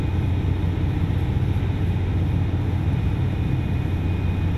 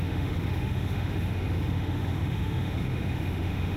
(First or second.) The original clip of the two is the first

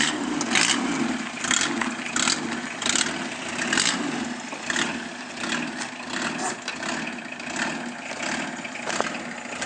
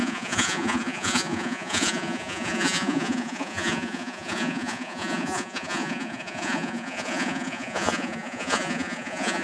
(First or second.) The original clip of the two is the first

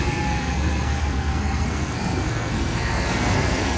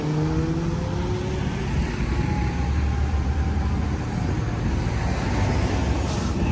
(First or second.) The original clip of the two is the second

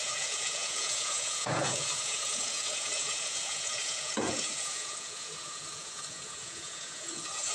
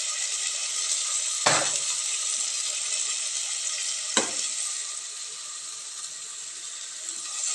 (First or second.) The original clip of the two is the second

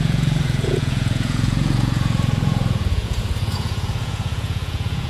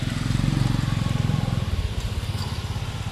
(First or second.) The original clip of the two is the second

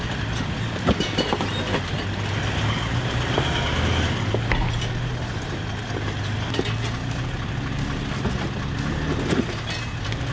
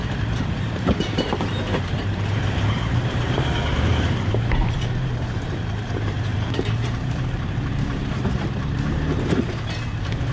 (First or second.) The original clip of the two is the first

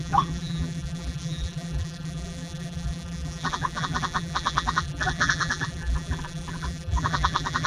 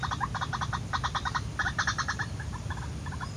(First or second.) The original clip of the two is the second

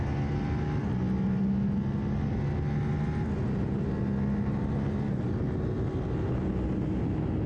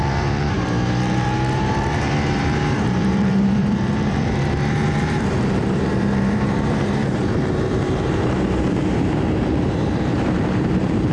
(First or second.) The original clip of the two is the first